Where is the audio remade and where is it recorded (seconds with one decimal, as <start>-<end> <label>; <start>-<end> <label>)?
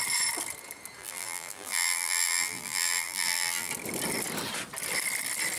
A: 0.0-1.0 recorded; 1.0-3.7 remade; 3.7-5.6 recorded